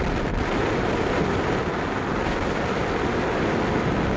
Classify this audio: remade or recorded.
recorded